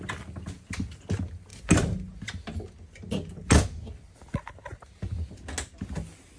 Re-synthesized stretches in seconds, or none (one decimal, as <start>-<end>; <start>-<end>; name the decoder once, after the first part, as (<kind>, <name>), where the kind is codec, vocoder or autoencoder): none